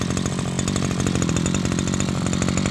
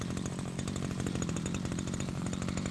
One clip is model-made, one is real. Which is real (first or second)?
first